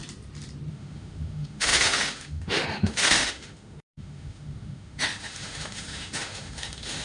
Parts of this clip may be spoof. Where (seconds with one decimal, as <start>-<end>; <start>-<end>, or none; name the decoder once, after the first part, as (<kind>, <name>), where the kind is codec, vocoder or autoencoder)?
0.7-7.0 (autoencoder, DAC-VAE)